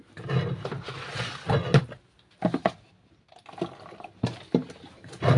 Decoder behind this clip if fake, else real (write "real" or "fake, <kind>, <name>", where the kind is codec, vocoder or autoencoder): real